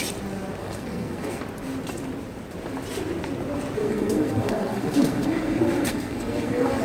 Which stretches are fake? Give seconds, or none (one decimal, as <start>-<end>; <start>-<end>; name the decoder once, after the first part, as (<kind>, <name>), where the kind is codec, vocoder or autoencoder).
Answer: 0.6-1.4 (codec, SNAC); 3.8-6.8